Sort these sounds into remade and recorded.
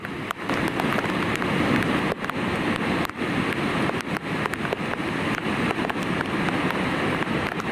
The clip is recorded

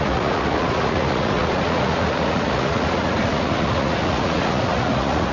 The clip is remade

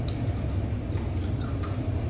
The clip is recorded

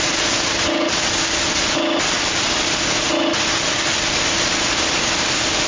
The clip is recorded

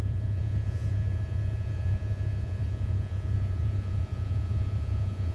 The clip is remade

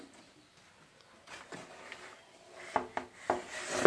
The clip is recorded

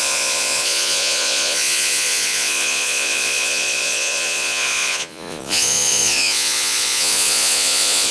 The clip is remade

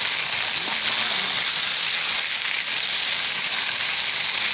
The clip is recorded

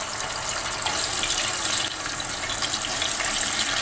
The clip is recorded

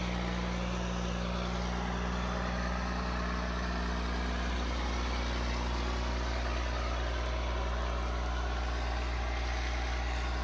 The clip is recorded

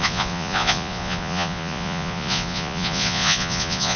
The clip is remade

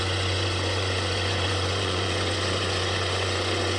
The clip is remade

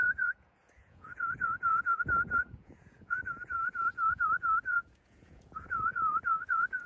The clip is remade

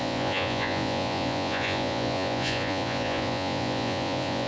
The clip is remade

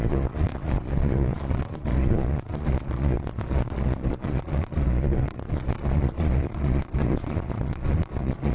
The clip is remade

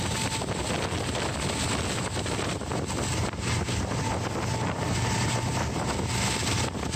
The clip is recorded